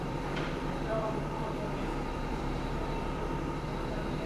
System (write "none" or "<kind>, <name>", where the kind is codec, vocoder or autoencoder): vocoder, BigVGAN v2